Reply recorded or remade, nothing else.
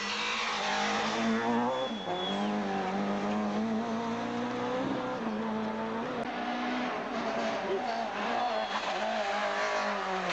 recorded